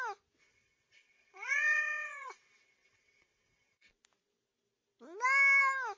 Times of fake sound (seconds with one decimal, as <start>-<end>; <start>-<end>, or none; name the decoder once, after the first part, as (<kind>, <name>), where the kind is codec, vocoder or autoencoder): 0.4-3.9 (vocoder, WaveNeXt)